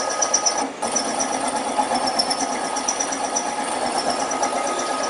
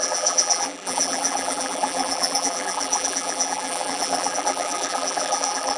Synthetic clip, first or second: second